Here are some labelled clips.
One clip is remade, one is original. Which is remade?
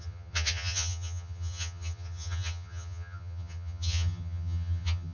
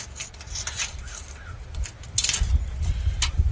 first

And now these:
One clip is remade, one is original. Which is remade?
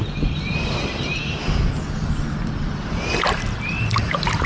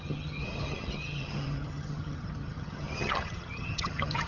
second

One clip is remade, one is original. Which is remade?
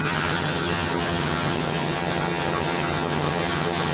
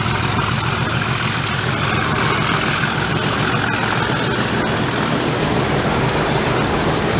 first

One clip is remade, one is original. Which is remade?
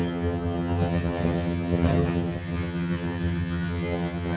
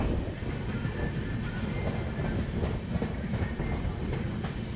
first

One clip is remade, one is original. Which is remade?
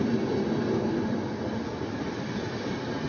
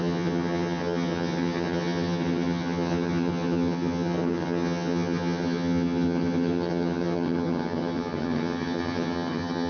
second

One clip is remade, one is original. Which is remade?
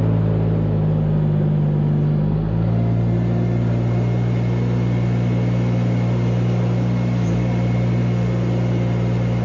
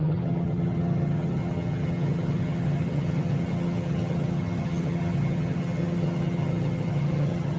second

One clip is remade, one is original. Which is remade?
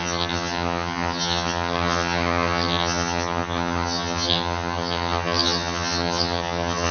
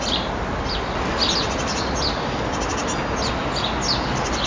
first